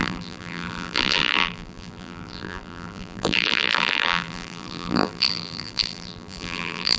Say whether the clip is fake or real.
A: fake